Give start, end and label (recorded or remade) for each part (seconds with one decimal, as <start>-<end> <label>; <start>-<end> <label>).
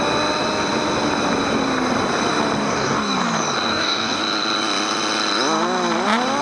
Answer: 0.0-2.6 recorded; 2.6-3.2 remade; 3.2-3.7 recorded; 3.7-4.2 remade; 4.2-6.4 recorded